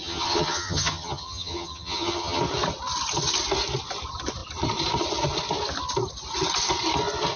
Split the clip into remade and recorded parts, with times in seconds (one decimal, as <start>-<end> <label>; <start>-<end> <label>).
0.0-2.4 remade; 2.4-7.4 recorded